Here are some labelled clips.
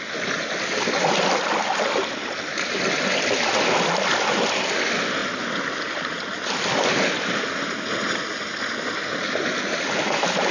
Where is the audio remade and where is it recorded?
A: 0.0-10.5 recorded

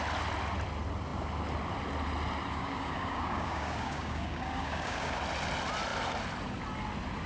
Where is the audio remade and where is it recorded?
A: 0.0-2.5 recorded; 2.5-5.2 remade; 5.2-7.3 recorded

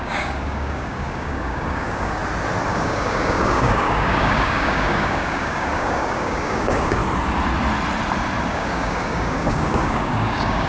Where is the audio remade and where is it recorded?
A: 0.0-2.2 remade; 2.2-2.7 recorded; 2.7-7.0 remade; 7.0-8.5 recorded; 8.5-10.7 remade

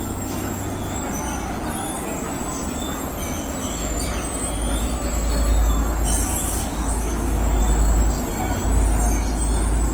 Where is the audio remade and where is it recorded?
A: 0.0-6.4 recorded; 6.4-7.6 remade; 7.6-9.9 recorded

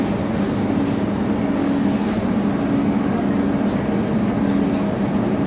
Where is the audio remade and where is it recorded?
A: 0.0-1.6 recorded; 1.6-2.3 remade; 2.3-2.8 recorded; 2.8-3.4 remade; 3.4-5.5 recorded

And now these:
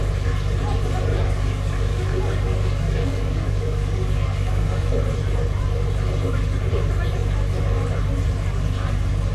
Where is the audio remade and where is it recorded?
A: 0.0-1.1 recorded; 1.1-4.9 remade; 4.9-9.3 recorded

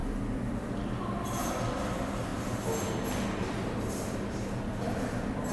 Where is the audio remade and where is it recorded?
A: 0.0-5.5 recorded